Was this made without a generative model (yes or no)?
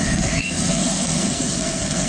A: no